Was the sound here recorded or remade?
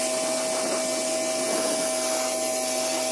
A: recorded